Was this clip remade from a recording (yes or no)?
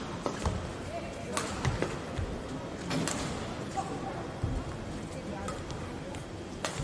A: no